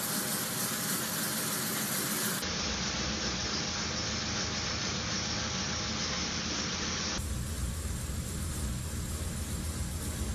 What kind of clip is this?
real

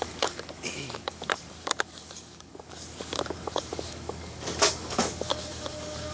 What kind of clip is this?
fake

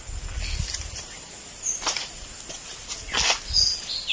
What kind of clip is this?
real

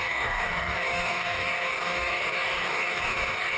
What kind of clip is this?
fake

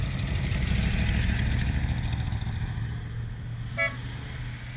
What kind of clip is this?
real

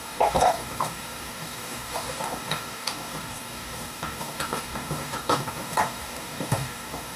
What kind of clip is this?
fake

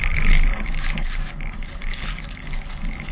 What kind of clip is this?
fake